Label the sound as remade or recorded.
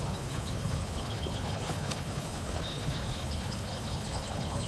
remade